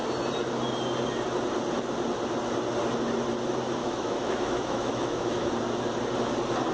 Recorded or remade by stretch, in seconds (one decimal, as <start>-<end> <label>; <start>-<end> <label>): 0.0-3.8 recorded; 3.8-5.5 remade; 5.5-6.7 recorded